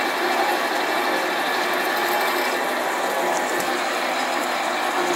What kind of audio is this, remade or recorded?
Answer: recorded